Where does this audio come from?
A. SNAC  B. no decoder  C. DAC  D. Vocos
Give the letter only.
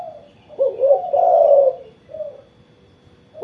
B